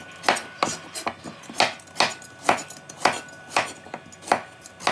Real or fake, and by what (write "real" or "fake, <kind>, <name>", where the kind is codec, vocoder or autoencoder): real